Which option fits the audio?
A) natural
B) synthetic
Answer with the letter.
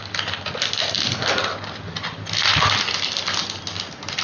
A